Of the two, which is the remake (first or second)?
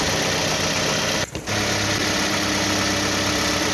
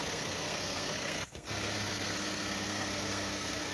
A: second